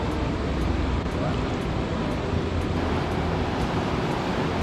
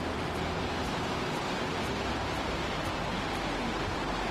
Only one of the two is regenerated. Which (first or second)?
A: first